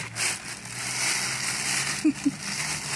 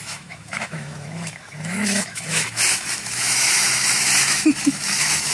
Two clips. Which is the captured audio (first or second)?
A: first